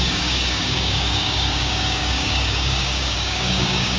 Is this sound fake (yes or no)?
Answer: yes